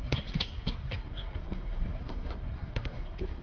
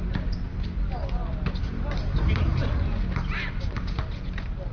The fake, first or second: first